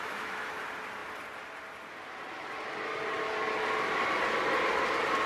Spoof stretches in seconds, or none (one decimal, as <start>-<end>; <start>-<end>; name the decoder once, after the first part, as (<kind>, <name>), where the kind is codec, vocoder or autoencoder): 0.0-0.6 (autoencoder, DAC-VAE)